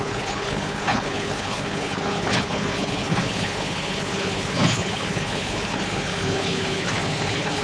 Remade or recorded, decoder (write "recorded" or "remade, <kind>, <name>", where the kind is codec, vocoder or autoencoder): remade, codec, HILCodec